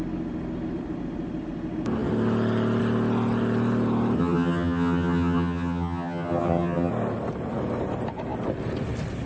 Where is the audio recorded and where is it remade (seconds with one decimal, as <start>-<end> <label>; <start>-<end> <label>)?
0.0-4.2 recorded; 4.2-6.9 remade; 6.9-9.3 recorded